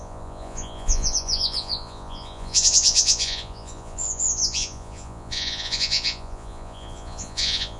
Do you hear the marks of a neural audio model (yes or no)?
yes